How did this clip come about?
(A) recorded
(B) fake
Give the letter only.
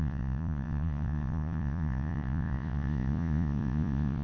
B